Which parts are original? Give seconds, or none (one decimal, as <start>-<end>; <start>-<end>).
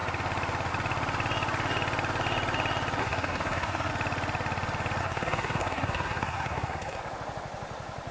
0.0-3.0; 3.9-5.0; 7.0-8.1